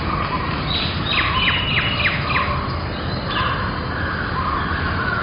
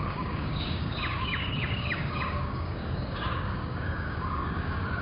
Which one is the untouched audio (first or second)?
first